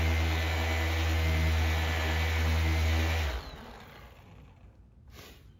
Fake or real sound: real